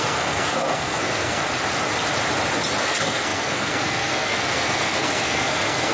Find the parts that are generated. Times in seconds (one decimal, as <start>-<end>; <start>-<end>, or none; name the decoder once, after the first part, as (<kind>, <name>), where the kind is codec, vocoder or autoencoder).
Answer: 0.0-1.4 (codec, SNAC); 2.8-5.9